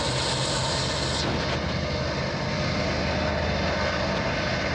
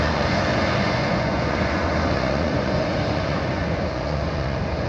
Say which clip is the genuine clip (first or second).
first